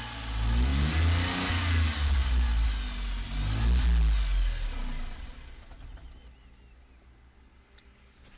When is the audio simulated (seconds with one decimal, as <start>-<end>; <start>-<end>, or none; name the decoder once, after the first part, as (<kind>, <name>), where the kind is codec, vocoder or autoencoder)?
none